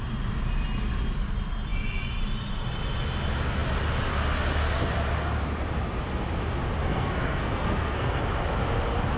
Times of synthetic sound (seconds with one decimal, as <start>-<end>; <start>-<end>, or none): 6.8-8.2